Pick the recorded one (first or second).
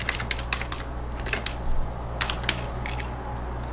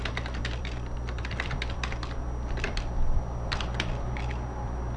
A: first